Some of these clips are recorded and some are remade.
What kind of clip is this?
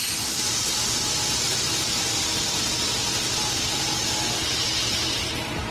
recorded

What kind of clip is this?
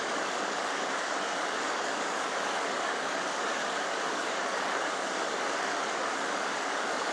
remade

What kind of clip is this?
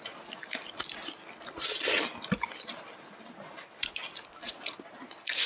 recorded